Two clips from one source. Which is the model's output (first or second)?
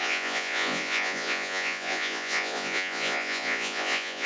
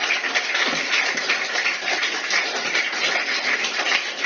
first